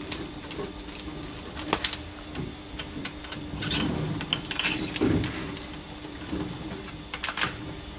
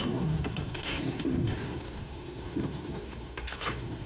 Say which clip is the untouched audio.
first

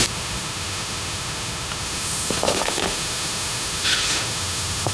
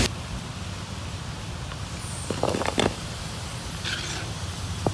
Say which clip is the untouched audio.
second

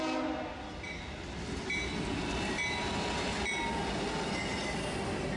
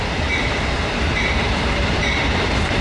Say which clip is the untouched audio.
first